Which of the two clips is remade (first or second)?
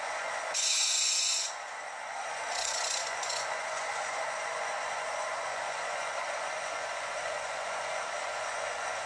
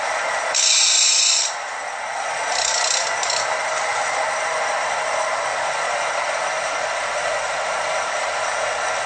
first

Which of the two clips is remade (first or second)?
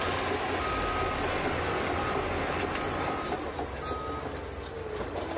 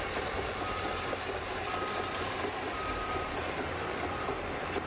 second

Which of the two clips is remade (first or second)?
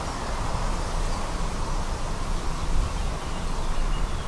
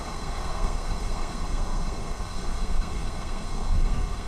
second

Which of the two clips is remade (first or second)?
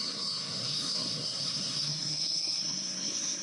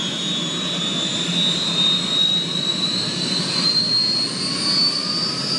first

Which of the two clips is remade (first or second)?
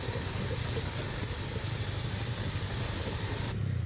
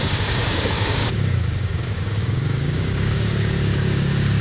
second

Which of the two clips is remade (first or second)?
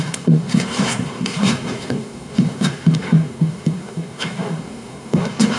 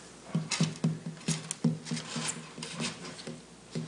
first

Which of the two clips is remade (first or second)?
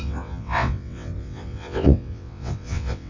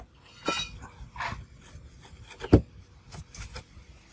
first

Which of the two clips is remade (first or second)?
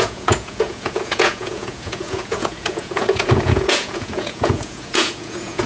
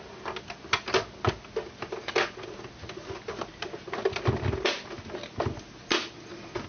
first